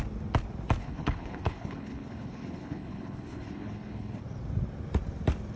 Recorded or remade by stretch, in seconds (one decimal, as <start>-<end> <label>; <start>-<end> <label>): 0.0-0.8 recorded; 0.8-4.2 remade; 4.2-5.6 recorded